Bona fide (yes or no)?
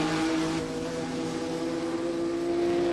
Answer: yes